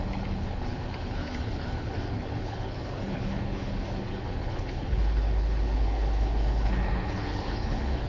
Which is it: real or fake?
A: fake